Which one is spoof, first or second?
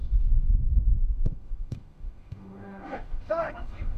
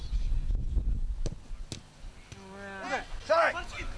first